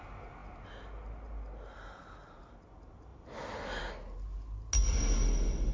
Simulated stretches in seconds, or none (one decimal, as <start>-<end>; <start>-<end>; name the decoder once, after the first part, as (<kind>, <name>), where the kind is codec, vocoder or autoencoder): none